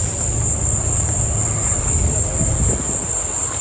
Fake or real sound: real